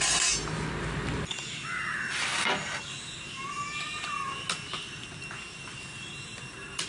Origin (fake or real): real